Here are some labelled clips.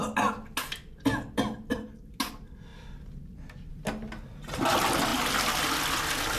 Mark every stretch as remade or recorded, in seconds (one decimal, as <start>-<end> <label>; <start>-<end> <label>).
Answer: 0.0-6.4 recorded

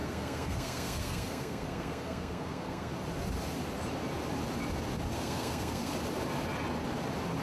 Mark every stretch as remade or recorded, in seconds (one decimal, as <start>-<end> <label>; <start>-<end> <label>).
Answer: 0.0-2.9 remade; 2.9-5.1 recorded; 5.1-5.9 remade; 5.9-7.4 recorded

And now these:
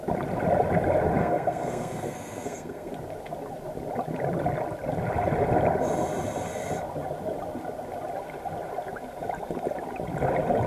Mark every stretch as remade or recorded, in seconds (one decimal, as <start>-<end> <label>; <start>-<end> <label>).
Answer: 0.0-1.2 recorded; 1.2-2.9 remade; 2.9-10.7 recorded